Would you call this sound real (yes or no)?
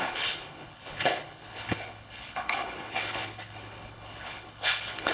no